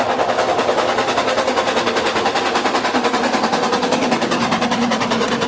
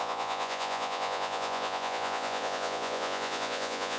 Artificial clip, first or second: second